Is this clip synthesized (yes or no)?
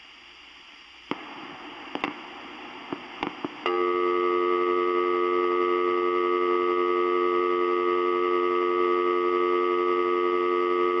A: no